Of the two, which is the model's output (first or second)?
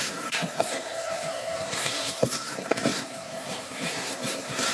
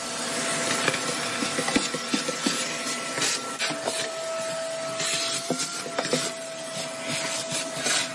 first